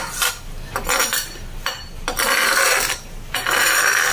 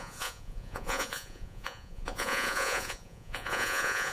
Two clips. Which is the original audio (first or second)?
first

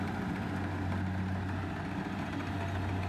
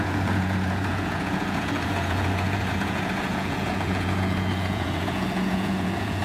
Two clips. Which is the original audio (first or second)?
first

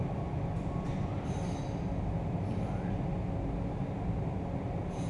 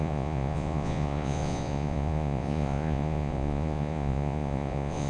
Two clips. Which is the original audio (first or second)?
first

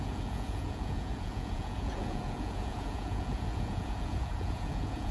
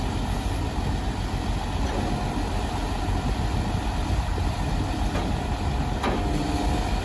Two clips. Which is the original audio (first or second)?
second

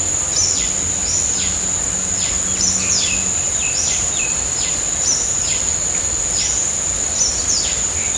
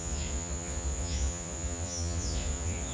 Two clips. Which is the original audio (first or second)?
first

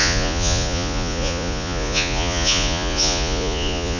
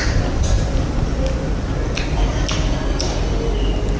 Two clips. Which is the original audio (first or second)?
second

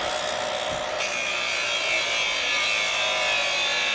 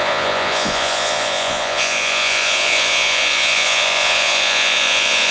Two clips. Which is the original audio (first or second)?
first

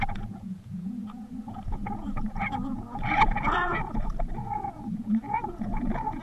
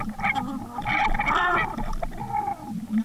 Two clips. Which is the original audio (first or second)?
second